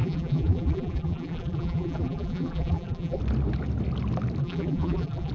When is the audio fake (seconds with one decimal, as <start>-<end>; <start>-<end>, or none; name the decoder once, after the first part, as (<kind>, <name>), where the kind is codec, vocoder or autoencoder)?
0.0-3.2 (vocoder, BigVGAN v2); 4.4-5.3